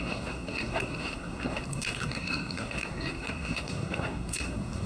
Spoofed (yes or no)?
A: yes